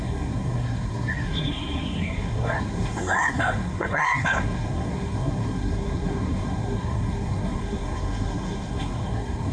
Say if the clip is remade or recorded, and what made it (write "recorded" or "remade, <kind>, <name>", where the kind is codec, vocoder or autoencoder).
remade, codec, SNAC